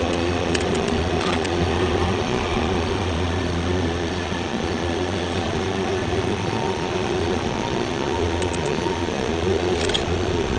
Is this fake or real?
fake